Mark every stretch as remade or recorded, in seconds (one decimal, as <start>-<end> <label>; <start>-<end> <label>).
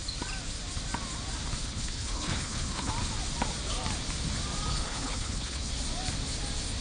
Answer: 0.0-1.6 recorded; 1.6-2.9 remade; 2.9-4.7 recorded; 4.7-5.7 remade; 5.7-6.8 recorded